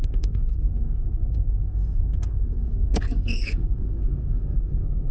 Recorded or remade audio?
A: remade